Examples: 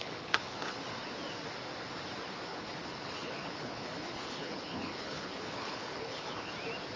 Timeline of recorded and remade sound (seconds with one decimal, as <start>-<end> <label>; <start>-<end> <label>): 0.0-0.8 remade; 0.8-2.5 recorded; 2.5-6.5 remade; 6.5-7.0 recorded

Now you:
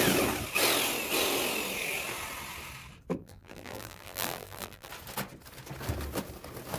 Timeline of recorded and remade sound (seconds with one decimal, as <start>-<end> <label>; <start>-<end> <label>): 0.0-3.2 recorded; 3.2-4.9 remade; 4.9-6.8 recorded

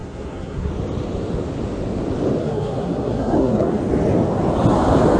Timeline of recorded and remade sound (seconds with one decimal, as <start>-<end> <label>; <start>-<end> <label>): 0.0-0.7 remade; 0.7-2.4 recorded; 2.4-3.8 remade; 3.8-5.2 recorded

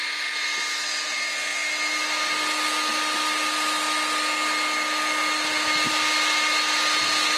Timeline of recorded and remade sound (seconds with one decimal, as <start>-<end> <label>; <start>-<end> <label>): 0.0-7.4 recorded

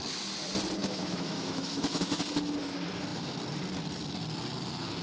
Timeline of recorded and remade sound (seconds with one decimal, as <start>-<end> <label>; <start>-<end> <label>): 0.0-0.8 recorded; 0.8-2.2 remade; 2.2-5.0 recorded

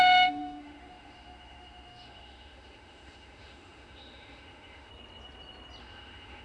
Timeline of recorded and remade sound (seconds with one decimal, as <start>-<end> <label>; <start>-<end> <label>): 0.0-4.9 remade; 4.9-5.8 recorded; 5.8-6.4 remade

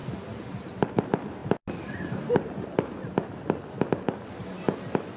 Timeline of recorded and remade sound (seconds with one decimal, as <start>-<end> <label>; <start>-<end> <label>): 0.0-5.2 recorded